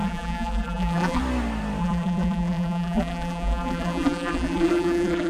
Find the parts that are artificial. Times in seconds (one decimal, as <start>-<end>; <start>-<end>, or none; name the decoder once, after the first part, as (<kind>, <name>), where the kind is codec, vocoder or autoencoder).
0.0-1.2 (vocoder, BigVGAN v2); 1.8-5.3